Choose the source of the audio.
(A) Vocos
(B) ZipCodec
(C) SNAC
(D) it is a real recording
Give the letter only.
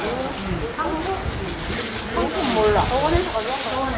D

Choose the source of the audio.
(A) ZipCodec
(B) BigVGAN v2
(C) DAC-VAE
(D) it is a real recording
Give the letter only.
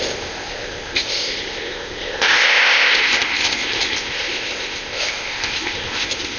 A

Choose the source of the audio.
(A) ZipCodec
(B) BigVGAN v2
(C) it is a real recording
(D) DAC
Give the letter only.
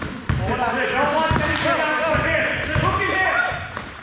C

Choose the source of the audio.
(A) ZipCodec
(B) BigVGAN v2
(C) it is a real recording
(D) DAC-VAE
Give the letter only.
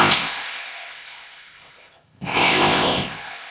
A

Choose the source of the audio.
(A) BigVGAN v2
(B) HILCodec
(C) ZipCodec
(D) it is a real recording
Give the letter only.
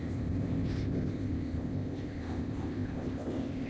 C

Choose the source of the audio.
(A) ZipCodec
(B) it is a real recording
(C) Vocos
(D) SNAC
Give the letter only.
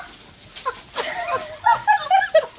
B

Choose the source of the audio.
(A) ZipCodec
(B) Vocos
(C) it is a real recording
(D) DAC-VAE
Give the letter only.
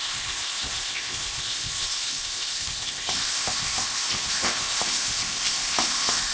A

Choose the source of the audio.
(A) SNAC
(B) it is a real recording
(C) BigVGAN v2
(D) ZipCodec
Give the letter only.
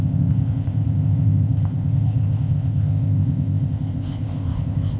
D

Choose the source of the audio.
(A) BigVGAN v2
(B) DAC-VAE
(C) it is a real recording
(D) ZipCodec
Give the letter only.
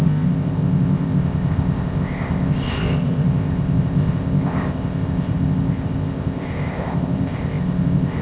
D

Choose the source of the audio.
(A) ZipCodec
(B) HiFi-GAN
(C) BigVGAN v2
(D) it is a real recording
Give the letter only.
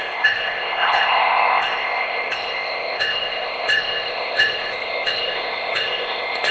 A